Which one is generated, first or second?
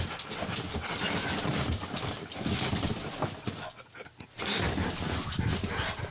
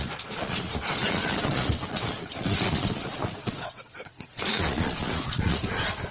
second